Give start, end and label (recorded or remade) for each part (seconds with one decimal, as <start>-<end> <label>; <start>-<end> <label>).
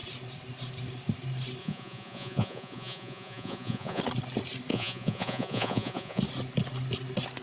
0.0-1.6 recorded; 1.6-4.0 remade; 4.0-4.7 recorded; 4.7-6.2 remade; 6.2-7.4 recorded